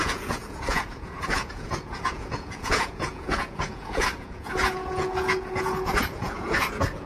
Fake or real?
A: fake